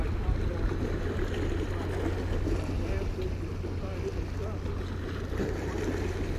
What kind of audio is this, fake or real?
real